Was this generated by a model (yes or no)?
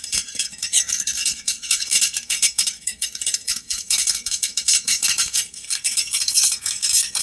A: yes